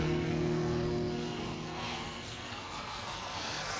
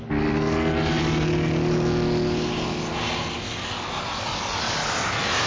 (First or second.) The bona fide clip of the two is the second